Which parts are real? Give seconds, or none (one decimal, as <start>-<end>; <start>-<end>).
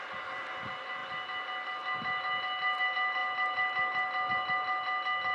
0.0-5.3